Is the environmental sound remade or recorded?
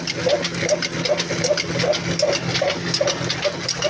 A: recorded